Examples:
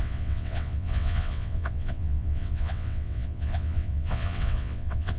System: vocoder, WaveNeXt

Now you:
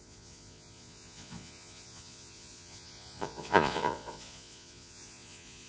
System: vocoder, Vocos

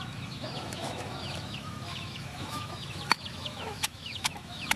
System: autoencoder, DAC-VAE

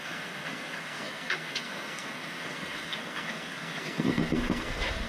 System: codec, SNAC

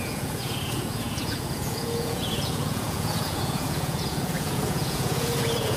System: vocoder, Vocos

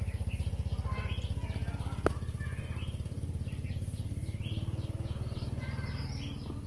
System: none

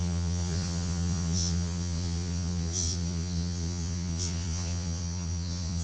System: vocoder, Vocos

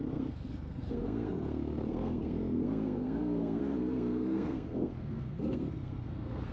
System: codec, SNAC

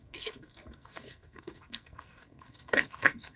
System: codec, SNAC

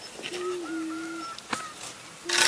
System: none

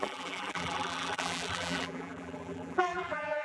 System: vocoder, BigVGAN v2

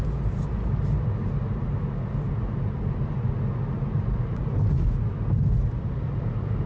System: none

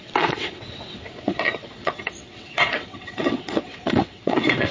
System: vocoder, WaveNeXt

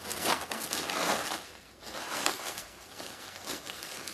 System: codec, SNAC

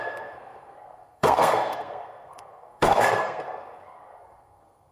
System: codec, SNAC